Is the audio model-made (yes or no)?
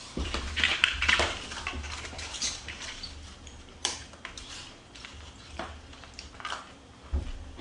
yes